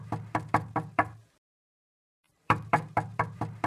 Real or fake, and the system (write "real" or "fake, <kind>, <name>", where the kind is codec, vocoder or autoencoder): fake, vocoder, BigVGAN v2